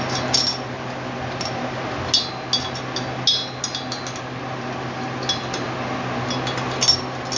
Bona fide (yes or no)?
yes